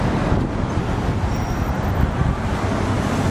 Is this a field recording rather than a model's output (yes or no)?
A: yes